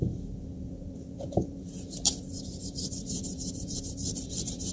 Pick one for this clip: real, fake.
fake